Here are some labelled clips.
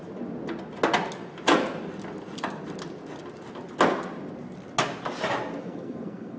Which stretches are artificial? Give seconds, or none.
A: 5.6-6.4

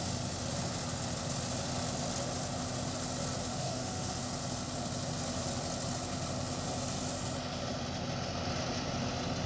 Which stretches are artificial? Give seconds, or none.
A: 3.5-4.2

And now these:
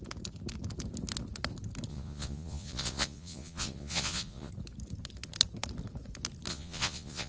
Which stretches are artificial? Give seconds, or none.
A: 1.9-4.5; 6.5-7.3

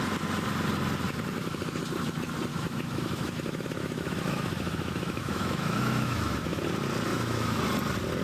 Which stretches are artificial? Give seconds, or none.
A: 2.5-6.6; 7.1-7.6

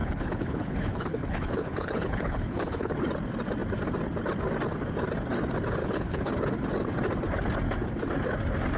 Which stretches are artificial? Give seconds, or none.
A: 0.0-2.9; 5.8-6.3

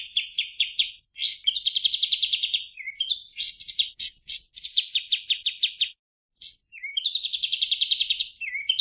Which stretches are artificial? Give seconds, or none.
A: 6.7-7.6